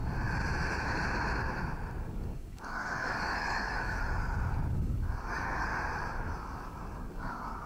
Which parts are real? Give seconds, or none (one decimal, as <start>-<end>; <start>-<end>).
0.0-2.0; 4.0-4.7; 5.7-6.4